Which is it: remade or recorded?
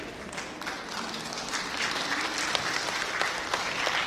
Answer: remade